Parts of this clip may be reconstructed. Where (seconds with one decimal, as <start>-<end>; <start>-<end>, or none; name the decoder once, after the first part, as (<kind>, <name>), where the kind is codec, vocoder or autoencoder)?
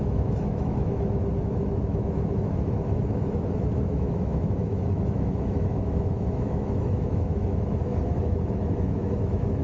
0.0-9.6 (autoencoder, DAC-VAE)